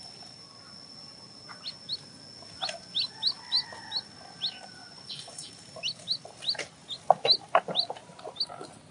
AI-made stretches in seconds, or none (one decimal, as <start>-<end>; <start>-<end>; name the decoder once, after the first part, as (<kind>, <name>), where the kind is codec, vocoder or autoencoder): 4.8-5.5 (vocoder, Vocos)